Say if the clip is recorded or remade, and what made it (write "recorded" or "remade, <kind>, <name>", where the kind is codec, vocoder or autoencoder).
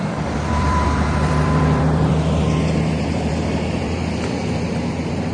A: remade, vocoder, BigVGAN v2